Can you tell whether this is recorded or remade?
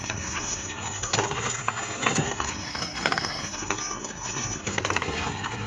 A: remade